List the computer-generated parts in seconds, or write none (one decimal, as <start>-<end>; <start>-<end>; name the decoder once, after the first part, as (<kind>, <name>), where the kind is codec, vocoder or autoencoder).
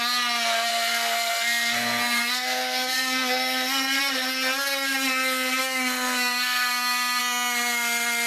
0.7-4.0 (codec, SNAC); 5.6-7.2